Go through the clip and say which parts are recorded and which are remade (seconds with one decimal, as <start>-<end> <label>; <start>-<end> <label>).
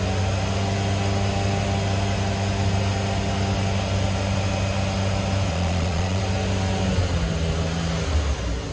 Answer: 0.0-5.5 recorded; 5.5-6.2 remade; 6.2-8.7 recorded